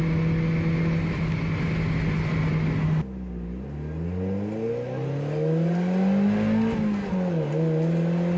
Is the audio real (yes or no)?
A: yes